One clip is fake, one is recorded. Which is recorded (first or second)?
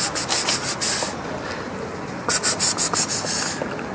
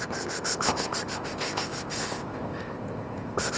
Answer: first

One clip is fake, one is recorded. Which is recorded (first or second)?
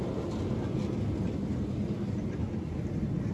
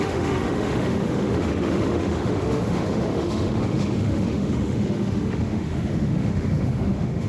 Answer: first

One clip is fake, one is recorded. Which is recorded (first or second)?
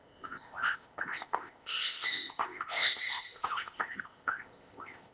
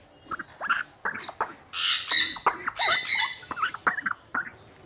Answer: second